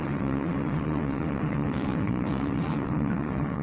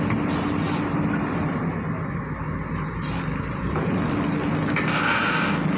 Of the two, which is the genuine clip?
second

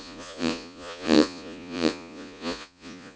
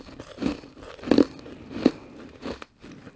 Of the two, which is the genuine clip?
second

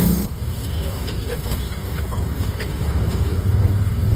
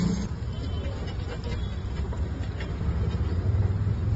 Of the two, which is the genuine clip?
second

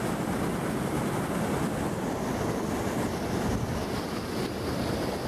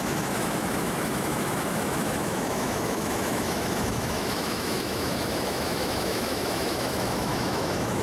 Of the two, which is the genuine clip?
first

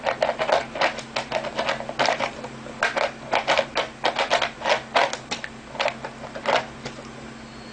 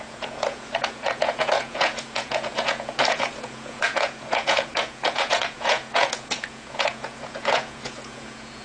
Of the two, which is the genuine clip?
first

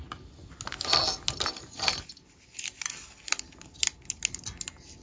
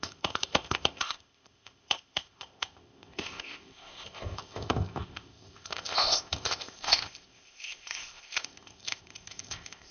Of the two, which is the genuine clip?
first